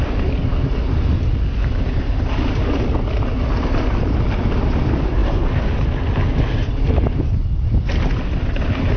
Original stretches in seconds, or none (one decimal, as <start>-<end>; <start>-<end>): 0.0-9.0